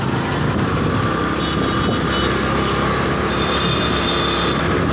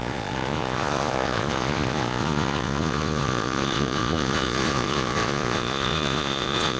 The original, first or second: first